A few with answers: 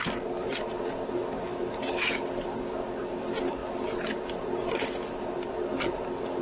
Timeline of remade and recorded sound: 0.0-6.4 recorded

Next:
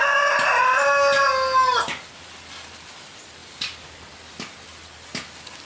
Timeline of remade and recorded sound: 0.0-5.7 recorded

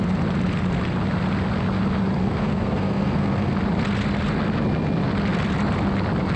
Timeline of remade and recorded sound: 0.0-2.2 recorded; 2.2-3.5 remade; 3.5-6.4 recorded